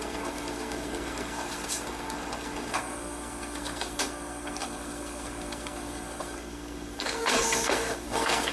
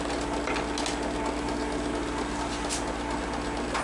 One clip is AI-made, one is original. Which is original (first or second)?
second